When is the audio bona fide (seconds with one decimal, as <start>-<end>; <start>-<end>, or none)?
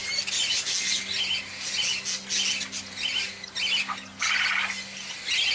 0.0-5.5